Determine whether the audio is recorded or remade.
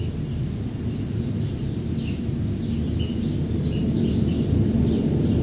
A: recorded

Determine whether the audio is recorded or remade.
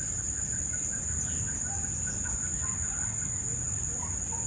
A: recorded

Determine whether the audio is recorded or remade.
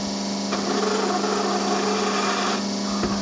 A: recorded